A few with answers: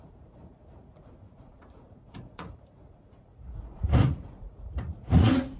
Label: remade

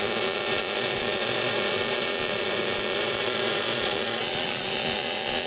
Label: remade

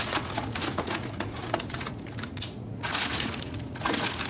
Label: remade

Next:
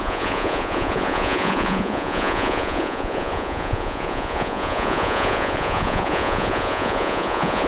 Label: remade